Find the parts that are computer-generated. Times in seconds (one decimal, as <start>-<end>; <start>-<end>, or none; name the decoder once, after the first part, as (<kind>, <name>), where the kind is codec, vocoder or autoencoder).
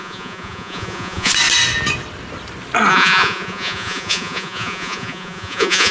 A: 0.0-1.3 (vocoder, Vocos); 2.9-5.9